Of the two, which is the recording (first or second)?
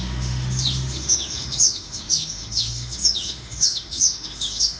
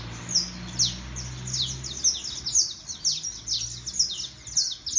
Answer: second